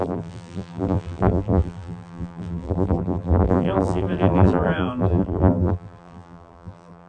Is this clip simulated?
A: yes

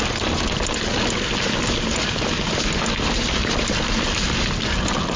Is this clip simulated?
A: no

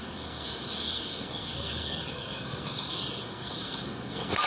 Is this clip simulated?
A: yes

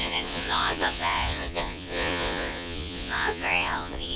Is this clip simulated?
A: yes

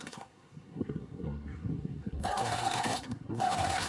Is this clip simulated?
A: yes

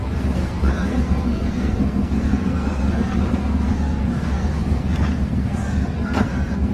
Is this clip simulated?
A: yes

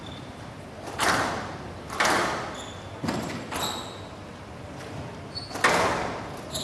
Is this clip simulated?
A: no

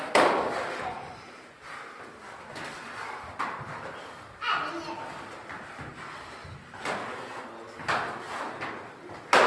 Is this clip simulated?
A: no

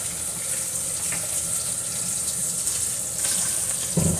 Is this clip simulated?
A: no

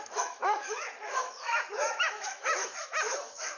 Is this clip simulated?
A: yes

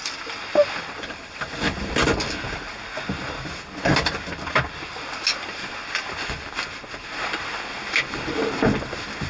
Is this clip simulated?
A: no